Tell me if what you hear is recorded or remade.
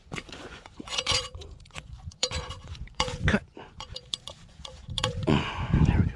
remade